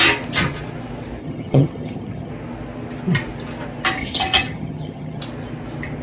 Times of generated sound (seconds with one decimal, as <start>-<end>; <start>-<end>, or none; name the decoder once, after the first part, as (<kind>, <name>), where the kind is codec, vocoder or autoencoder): 1.2-2.3 (vocoder, HiFi-GAN); 4.0-5.2